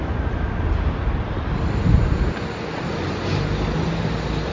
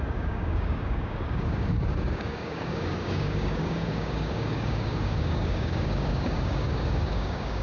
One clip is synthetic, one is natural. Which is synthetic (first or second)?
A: second